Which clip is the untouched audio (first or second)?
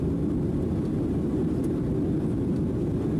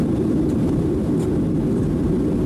second